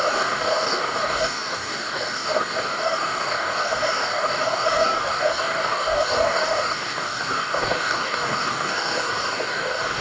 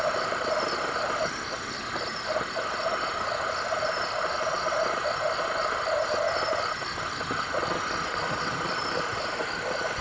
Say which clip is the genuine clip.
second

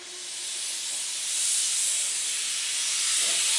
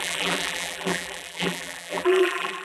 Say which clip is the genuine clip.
first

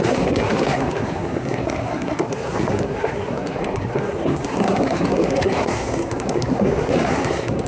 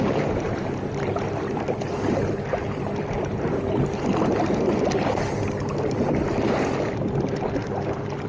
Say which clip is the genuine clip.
second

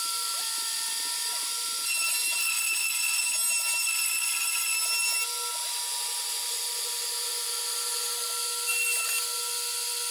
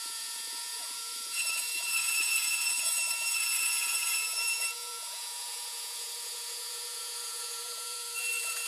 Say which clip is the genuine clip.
first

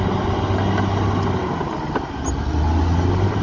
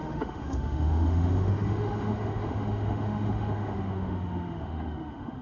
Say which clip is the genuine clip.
first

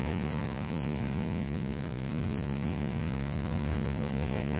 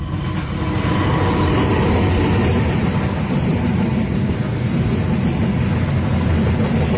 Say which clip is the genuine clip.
second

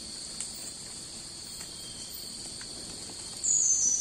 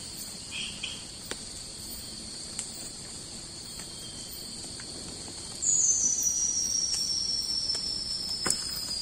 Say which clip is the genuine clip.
first